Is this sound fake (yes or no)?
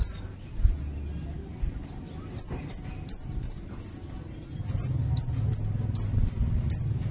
no